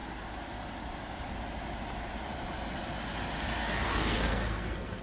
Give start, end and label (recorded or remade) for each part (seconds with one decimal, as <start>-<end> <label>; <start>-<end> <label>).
0.0-3.6 recorded; 3.6-5.0 remade